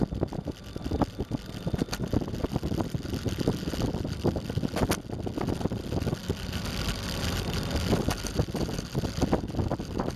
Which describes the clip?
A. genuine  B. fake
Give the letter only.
A